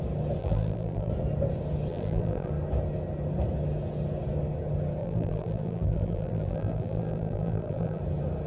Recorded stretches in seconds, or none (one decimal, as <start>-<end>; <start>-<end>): 0.0-0.4; 1.1-1.9; 2.5-5.0; 8.0-8.5